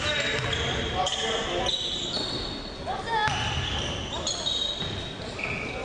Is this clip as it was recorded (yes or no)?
yes